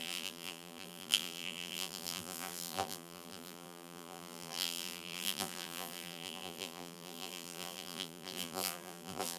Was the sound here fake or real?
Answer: fake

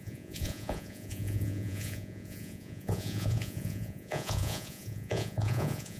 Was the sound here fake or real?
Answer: fake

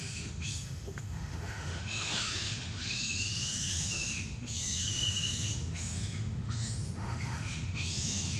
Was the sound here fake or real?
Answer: fake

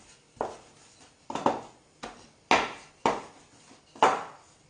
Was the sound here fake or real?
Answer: real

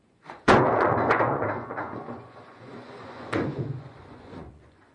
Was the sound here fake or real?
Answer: fake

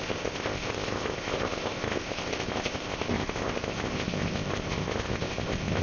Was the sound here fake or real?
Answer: fake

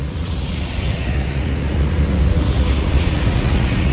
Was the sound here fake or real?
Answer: fake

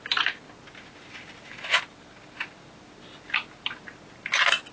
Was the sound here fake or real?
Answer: real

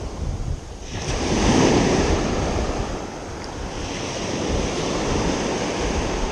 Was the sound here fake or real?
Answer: fake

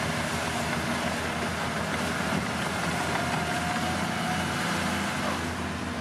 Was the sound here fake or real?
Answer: real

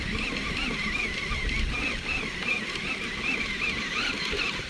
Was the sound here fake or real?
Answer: real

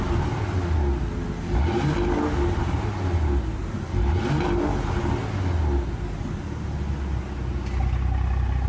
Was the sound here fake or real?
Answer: real